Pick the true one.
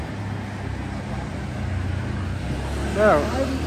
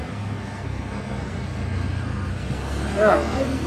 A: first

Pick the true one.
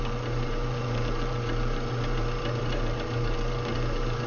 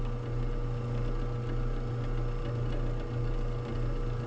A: second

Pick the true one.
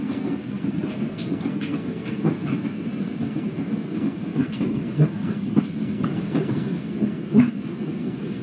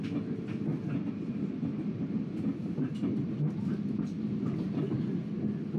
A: second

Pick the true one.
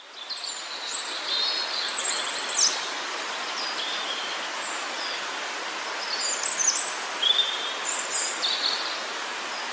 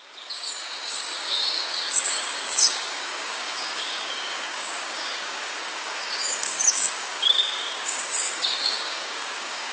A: first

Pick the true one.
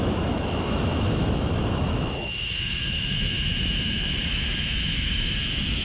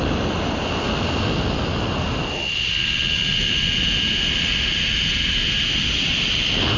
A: second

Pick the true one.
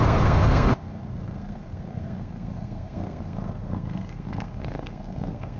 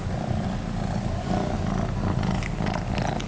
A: second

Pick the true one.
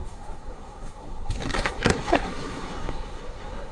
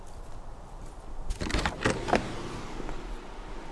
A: second